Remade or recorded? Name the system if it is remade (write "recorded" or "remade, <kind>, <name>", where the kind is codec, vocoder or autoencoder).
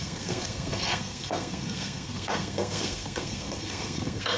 remade, codec, SNAC